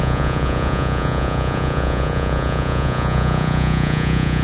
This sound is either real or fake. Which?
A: fake